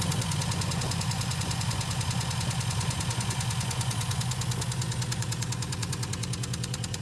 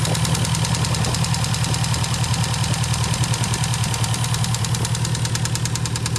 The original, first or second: second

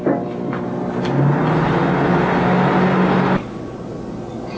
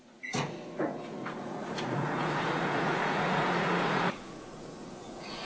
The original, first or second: first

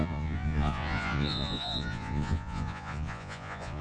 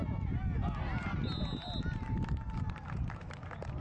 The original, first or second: second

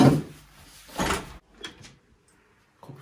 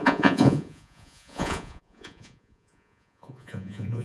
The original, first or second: first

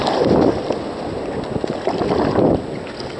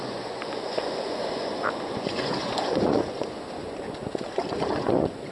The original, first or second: first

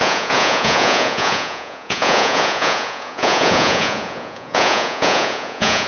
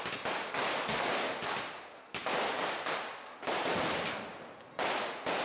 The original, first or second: second